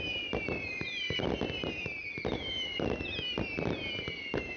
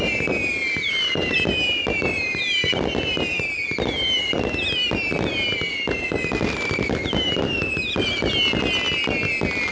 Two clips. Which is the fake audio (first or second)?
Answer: first